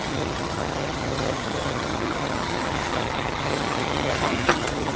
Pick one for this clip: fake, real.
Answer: fake